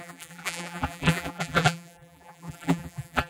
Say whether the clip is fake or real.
fake